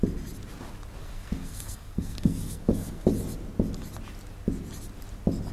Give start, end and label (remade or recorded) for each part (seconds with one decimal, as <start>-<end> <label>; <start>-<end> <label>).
0.0-1.0 recorded; 1.0-3.1 remade; 3.1-5.5 recorded